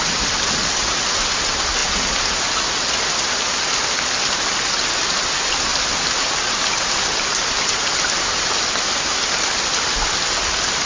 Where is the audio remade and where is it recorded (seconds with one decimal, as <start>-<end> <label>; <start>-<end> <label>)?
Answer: 0.0-10.9 recorded